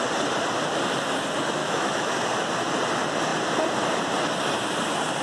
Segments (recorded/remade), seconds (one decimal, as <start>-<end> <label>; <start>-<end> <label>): 0.0-1.6 recorded; 1.6-2.1 remade; 2.1-5.2 recorded